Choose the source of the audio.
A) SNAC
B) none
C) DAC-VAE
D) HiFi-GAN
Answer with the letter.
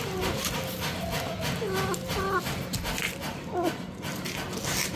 B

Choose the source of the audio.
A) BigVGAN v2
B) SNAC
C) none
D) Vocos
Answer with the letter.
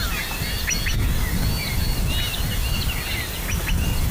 C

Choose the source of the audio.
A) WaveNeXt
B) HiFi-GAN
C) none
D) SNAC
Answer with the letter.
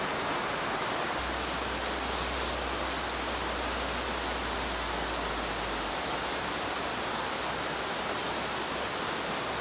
C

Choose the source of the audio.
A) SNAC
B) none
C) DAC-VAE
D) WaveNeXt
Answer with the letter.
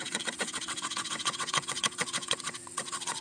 D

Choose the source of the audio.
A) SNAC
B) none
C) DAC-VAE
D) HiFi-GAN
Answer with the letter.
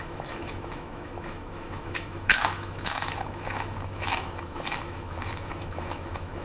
C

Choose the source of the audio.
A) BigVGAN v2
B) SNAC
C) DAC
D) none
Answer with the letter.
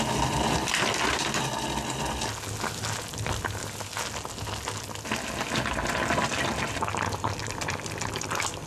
D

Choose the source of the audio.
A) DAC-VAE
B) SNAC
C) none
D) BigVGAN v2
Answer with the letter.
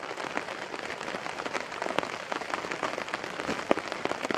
C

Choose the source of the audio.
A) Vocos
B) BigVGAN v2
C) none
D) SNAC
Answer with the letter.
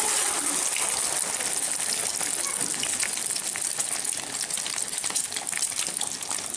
C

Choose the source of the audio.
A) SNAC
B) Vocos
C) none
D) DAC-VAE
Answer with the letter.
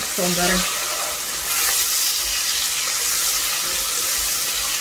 C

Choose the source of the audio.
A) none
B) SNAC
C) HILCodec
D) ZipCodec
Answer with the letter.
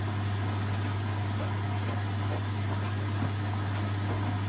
A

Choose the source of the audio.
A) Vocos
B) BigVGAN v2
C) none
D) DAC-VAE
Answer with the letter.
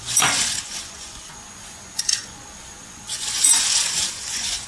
A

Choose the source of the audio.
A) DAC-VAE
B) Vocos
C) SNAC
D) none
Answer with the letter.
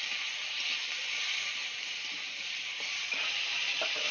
D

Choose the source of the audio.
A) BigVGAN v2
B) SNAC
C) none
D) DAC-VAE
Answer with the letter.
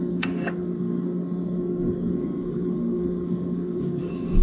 B